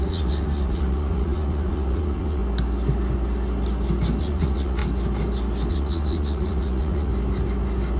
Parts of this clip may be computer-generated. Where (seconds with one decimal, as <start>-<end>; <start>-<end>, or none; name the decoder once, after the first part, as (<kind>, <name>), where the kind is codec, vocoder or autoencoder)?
0.0-2.4 (vocoder, Vocos); 4.2-4.8; 5.7-7.1